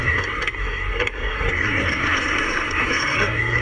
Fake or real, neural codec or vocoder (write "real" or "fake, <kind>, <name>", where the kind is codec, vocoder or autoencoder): fake, codec, SNAC